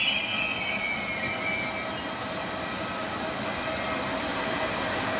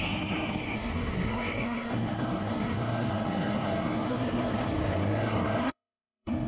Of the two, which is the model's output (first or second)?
second